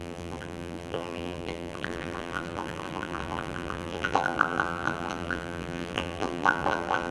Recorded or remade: remade